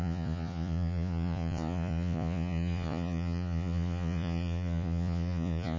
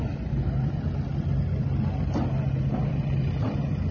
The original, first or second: second